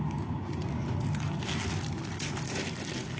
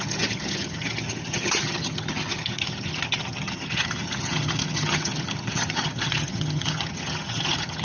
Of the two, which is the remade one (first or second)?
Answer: second